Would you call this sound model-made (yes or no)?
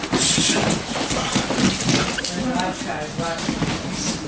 no